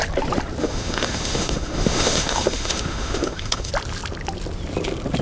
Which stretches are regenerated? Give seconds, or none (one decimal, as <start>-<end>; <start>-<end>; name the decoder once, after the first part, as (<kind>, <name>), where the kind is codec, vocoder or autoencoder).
0.6-3.7 (autoencoder, DAC-VAE)